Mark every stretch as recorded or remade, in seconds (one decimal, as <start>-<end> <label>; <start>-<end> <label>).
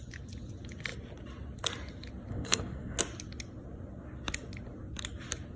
0.0-2.3 recorded; 2.3-3.0 remade; 3.0-5.6 recorded